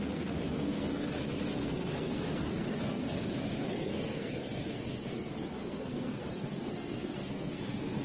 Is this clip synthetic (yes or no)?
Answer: yes